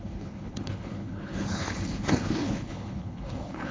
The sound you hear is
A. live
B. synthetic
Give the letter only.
B